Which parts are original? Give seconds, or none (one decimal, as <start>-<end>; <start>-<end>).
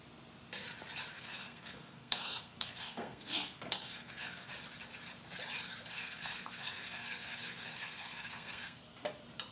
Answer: 0.0-1.1; 4.5-5.9; 8.8-9.5